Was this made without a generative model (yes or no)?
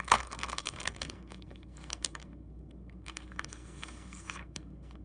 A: no